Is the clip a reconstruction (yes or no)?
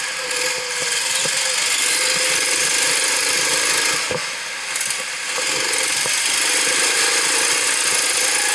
no